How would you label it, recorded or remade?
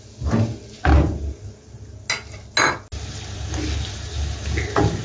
recorded